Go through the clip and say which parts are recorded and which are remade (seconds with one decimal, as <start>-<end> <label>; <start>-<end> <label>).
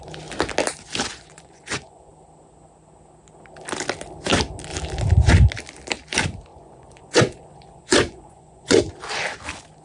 0.0-1.1 recorded; 1.1-2.1 remade; 2.1-6.5 recorded; 6.5-8.8 remade; 8.8-9.8 recorded